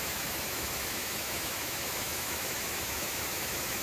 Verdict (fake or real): fake